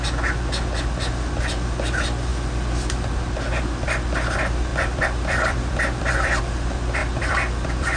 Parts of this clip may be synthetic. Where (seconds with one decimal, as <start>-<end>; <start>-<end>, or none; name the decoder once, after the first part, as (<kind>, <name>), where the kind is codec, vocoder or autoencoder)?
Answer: 4.7-6.4 (vocoder, BigVGAN v2); 7.0-8.0